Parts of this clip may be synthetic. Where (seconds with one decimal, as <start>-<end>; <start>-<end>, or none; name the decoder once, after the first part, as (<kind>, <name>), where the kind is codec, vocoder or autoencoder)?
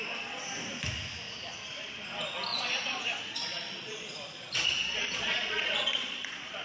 2.5-6.6 (vocoder, Vocos)